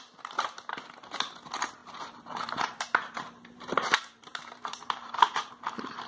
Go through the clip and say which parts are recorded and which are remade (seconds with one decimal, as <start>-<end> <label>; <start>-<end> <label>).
0.0-1.8 recorded; 1.8-5.5 remade; 5.5-6.1 recorded